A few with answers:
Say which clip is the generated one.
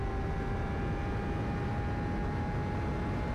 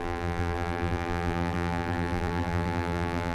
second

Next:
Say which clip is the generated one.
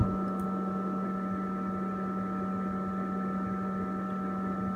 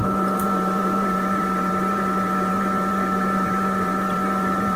second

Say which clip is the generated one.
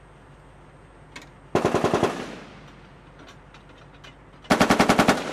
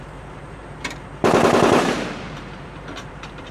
second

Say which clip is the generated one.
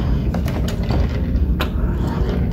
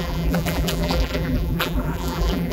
second